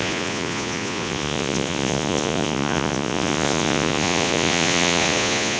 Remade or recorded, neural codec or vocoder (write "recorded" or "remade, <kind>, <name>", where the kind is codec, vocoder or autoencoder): remade, vocoder, Vocos